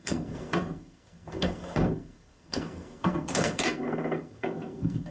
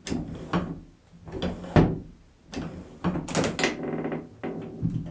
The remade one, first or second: first